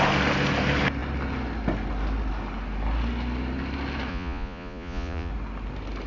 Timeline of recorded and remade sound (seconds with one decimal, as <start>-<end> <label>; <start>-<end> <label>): 0.0-4.1 recorded; 4.1-5.3 remade; 5.3-6.1 recorded